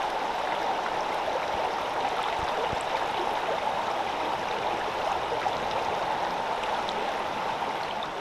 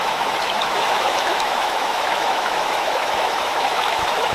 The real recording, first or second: first